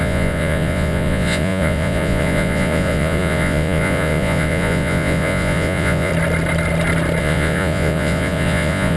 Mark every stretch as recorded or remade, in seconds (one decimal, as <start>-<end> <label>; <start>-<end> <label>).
0.0-6.1 remade; 6.1-7.2 recorded; 7.2-9.0 remade